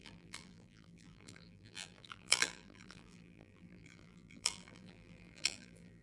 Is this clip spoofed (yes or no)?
yes